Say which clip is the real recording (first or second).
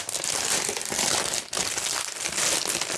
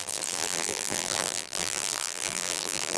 first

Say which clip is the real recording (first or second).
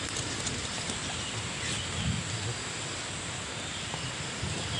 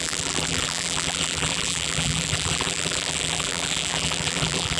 first